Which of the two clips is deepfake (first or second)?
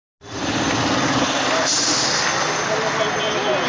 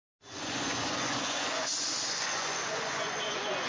second